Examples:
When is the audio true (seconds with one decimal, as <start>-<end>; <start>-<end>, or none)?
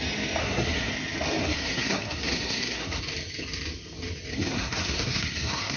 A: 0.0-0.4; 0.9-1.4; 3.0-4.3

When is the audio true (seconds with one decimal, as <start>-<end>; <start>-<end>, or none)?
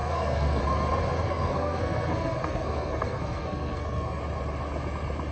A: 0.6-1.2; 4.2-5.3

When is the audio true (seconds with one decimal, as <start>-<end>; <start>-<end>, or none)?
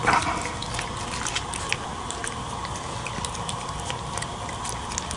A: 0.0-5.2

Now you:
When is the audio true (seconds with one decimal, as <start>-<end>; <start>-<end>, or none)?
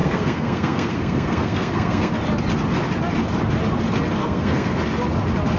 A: 2.1-4.2; 4.8-5.6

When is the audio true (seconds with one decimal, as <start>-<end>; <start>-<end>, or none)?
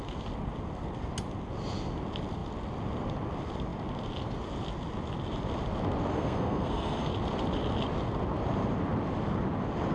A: 0.0-6.1; 7.1-9.9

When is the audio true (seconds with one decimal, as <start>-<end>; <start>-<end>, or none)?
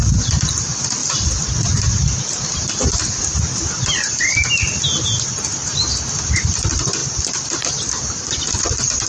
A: 0.0-9.1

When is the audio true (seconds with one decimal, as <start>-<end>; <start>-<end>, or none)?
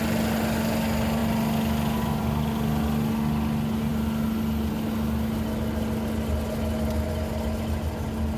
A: 0.0-8.4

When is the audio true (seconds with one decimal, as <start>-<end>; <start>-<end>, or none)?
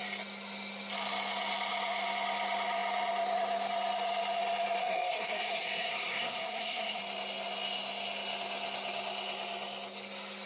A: 0.0-4.8; 7.0-10.5